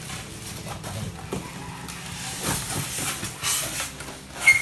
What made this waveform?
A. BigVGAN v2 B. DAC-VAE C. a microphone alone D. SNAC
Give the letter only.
C